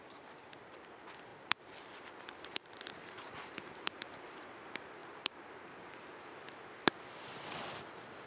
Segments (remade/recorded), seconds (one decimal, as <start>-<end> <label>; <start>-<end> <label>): 0.0-1.3 recorded; 1.3-4.2 remade; 4.2-5.0 recorded; 5.0-6.0 remade; 6.0-8.3 recorded